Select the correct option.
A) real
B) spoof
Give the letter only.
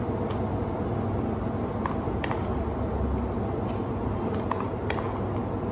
A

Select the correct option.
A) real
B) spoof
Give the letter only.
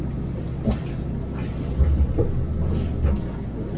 A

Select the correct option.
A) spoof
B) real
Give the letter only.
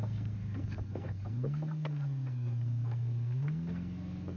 A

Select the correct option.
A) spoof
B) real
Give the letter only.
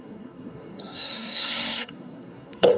A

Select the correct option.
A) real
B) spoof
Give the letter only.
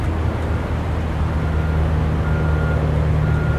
A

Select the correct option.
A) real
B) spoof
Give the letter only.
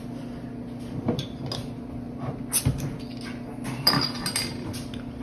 A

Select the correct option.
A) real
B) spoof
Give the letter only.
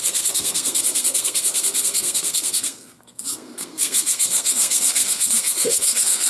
B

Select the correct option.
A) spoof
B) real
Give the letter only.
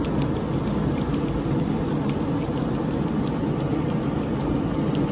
B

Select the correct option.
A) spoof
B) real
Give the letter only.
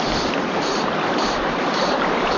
B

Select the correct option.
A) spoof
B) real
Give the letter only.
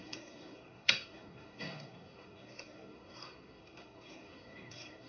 A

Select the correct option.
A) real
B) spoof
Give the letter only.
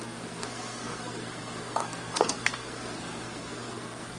B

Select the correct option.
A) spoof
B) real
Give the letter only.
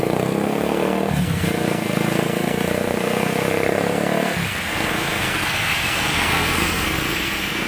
A